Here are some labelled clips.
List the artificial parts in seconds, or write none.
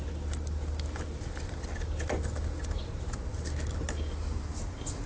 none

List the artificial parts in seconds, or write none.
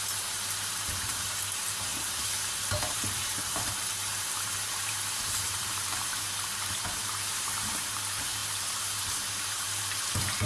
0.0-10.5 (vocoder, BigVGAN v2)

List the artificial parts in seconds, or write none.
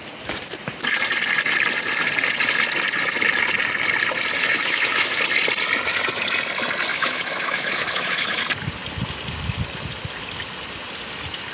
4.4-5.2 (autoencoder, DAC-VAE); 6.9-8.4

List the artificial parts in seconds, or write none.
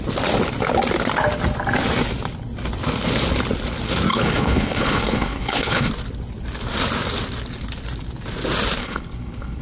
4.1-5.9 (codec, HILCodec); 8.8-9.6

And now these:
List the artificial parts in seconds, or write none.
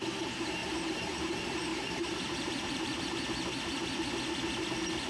0.6-1.2 (vocoder, BigVGAN v2); 1.7-3.0; 3.5-4.1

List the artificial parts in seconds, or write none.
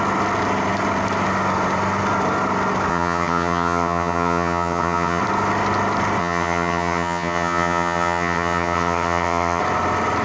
2.9-5.2 (vocoder, HiFi-GAN); 6.2-9.6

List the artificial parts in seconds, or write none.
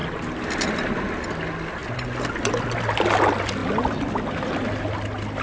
none